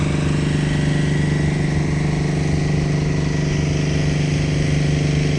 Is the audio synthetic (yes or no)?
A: no